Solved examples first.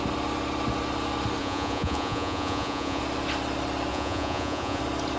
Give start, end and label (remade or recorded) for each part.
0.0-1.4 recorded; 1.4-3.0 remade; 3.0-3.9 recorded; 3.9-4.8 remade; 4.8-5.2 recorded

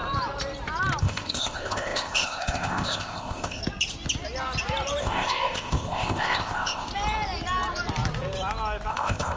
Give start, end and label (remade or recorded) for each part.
0.0-1.0 recorded; 1.0-3.6 remade; 3.6-5.0 recorded; 5.0-6.9 remade; 6.9-8.9 recorded; 8.9-9.4 remade

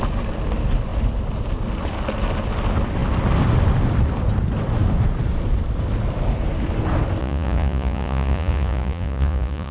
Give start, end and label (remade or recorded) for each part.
0.0-7.2 recorded; 7.2-9.7 remade

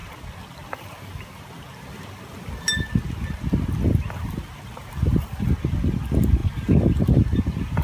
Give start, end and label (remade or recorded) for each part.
0.0-7.8 recorded

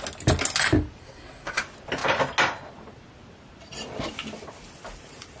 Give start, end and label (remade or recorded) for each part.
0.0-1.0 recorded; 1.0-1.6 remade; 1.6-5.4 recorded

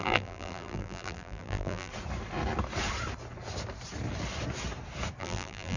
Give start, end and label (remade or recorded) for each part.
0.0-1.9 remade; 1.9-5.2 recorded; 5.2-5.8 remade